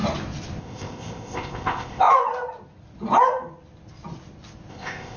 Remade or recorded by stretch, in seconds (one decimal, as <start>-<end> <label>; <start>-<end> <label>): 0.0-0.6 recorded; 0.6-2.1 remade; 2.1-4.7 recorded; 4.7-5.2 remade